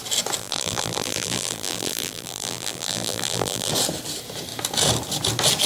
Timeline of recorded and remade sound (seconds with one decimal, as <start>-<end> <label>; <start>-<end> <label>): 0.0-0.4 recorded; 0.4-3.7 remade; 3.7-5.7 recorded